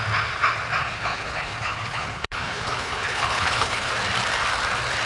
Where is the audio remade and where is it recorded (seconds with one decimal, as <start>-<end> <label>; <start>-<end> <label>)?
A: 0.0-0.8 recorded; 0.8-3.9 remade; 3.9-5.1 recorded